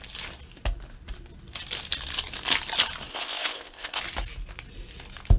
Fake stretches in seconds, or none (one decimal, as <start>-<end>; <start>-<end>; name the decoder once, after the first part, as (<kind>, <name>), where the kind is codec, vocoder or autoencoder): 3.1-4.0 (codec, ZipCodec)